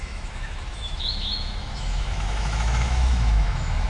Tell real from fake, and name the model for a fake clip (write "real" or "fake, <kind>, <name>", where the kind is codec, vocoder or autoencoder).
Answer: fake, autoencoder, DAC-VAE